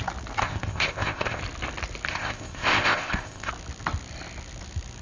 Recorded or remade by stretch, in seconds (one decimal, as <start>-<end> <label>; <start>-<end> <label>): 0.0-0.4 recorded; 0.4-1.4 remade; 1.4-2.1 recorded; 2.1-3.5 remade; 3.5-5.0 recorded